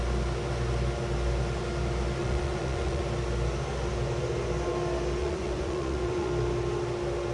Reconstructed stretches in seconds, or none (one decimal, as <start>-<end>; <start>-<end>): 2.2-3.0; 5.2-6.3